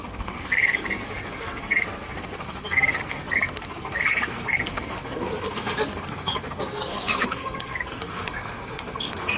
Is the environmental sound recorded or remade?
remade